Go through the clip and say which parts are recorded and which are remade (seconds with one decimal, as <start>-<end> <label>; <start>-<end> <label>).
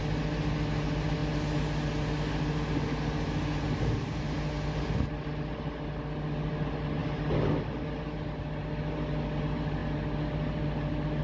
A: 0.0-11.2 recorded